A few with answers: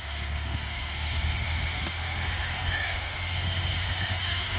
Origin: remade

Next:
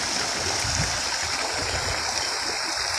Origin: recorded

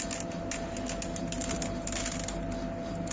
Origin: recorded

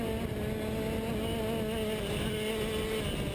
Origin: recorded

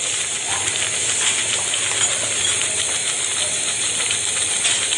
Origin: recorded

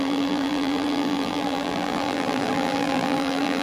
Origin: remade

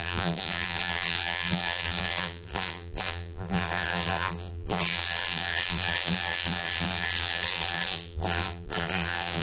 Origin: remade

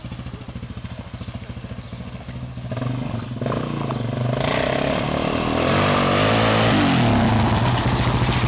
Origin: recorded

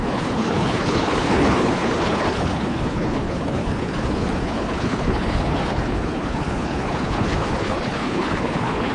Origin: remade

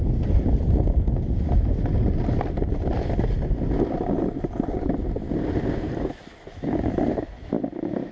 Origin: recorded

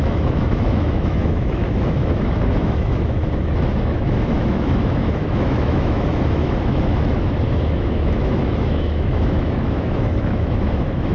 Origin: remade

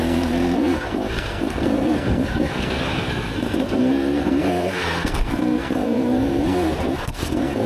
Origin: remade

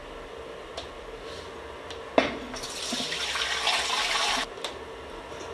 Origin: recorded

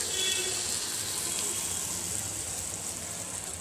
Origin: recorded